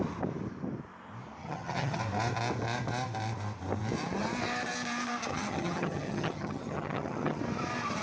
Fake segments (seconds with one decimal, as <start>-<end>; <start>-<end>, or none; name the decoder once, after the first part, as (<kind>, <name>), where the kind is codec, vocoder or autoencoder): 1.4-2.0 (vocoder, HiFi-GAN); 5.3-7.4